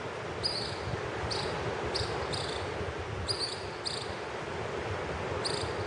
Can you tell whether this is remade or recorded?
recorded